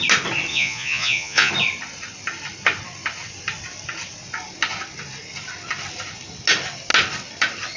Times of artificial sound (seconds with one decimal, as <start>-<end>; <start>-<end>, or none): 0.5-1.5